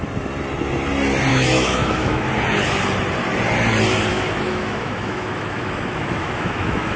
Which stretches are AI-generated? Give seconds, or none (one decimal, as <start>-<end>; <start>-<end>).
1.3-2.3; 4.1-7.0